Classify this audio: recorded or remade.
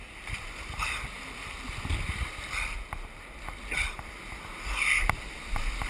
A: recorded